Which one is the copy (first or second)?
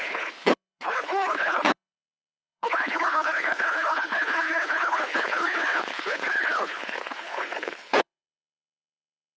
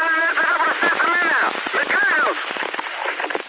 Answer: first